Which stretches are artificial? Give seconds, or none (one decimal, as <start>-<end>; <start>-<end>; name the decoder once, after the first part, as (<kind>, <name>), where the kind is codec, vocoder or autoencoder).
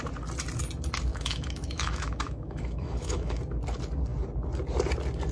1.1-3.4 (autoencoder, DAC-VAE)